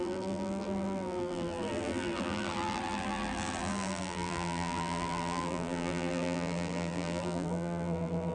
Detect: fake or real fake